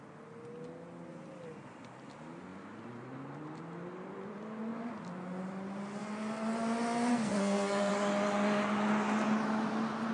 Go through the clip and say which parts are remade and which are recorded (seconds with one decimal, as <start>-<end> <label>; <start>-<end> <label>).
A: 0.0-7.1 recorded; 7.1-7.9 remade; 7.9-10.1 recorded

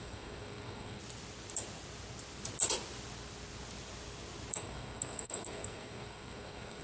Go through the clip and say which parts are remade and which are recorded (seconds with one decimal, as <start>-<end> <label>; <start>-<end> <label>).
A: 0.0-1.0 remade; 1.0-4.5 recorded; 4.5-6.8 remade

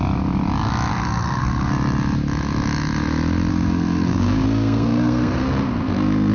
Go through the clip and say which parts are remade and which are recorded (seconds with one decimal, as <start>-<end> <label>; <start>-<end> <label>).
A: 0.0-0.9 recorded; 0.9-1.7 remade; 1.7-3.5 recorded; 3.5-6.3 remade